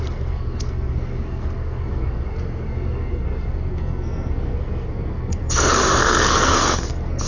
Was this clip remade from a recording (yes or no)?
yes